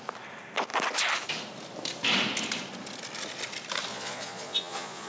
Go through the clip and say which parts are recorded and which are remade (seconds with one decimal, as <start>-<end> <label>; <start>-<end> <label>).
0.0-3.9 recorded; 3.9-5.1 remade